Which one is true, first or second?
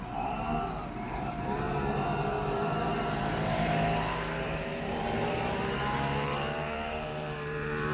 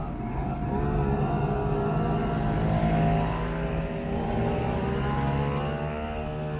second